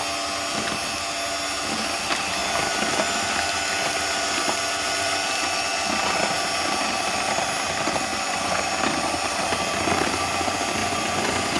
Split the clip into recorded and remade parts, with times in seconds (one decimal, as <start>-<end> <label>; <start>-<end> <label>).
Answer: 0.0-8.1 recorded; 8.1-8.6 remade; 8.6-10.8 recorded; 10.8-11.6 remade